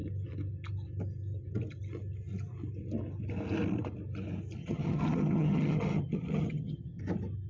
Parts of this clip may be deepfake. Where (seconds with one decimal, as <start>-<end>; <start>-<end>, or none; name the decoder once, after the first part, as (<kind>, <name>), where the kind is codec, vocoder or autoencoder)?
4.6-7.0 (vocoder, HiFi-GAN)